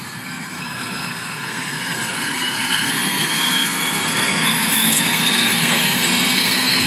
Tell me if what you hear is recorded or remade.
remade